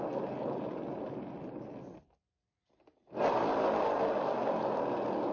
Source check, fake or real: real